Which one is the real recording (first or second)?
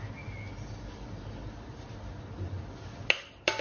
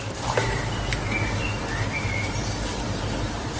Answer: first